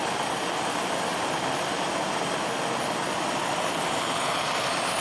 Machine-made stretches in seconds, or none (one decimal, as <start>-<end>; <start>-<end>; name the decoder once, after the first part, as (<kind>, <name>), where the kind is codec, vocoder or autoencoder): none